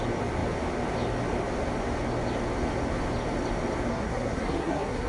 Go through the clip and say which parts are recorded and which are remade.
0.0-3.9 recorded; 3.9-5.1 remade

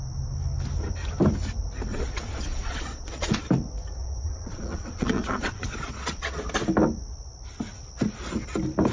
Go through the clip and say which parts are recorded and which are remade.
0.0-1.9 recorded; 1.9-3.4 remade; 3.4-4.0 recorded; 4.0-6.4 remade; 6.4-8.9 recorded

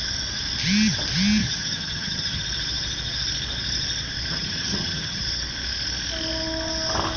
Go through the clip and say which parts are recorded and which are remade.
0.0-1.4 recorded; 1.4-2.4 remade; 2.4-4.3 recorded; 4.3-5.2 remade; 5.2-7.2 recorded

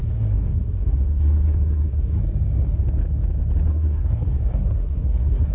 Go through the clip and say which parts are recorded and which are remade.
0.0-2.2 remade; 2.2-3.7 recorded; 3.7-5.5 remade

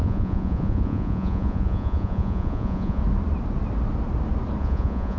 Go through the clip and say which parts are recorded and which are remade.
0.0-3.0 remade; 3.0-4.6 recorded; 4.6-5.2 remade

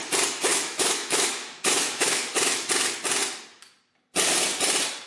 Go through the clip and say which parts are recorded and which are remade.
0.0-0.5 recorded; 0.5-2.7 remade; 2.7-5.1 recorded

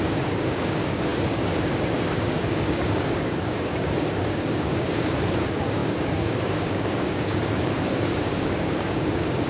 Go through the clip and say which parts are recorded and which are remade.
0.0-9.5 remade